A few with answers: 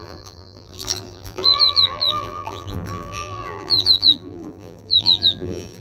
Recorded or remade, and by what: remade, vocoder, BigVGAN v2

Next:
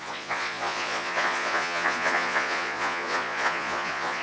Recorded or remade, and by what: remade, vocoder, Vocos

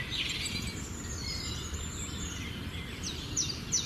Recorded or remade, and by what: remade, vocoder, BigVGAN v2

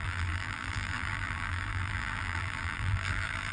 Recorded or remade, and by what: remade, vocoder, BigVGAN v2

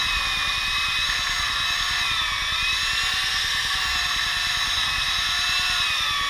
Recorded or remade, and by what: recorded